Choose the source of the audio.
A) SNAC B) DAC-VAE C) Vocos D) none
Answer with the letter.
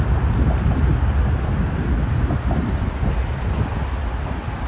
D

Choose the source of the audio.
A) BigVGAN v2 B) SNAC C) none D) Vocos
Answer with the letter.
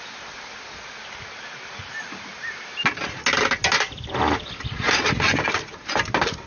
C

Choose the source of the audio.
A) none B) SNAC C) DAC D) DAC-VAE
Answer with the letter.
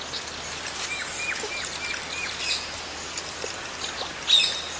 A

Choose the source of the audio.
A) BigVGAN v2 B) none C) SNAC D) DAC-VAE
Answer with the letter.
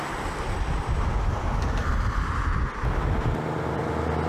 B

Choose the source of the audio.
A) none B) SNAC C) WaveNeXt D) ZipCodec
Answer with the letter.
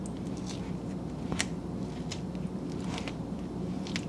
A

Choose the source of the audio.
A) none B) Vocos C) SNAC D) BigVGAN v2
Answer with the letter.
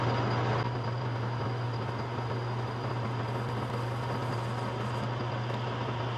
A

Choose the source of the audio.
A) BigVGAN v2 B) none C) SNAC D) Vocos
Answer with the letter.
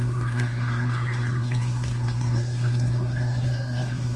C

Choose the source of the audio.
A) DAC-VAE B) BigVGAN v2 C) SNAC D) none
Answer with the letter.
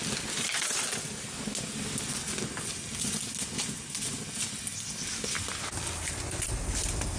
D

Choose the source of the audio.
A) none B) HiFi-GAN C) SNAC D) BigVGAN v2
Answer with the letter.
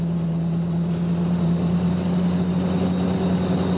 A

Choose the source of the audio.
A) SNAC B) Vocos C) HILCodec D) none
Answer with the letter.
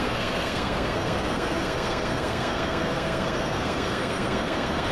A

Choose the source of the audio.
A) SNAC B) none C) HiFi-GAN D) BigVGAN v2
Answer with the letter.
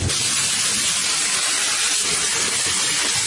B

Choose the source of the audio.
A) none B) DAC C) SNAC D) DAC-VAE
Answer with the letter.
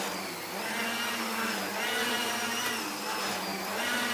A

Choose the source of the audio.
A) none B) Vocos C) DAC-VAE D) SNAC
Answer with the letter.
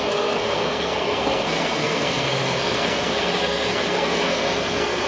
D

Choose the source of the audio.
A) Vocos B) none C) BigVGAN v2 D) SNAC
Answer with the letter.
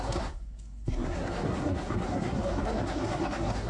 D